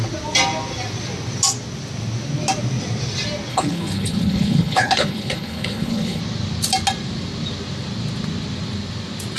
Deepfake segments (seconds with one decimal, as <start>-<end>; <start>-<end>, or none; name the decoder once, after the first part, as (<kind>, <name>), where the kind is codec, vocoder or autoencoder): 3.5-6.2 (codec, HILCodec)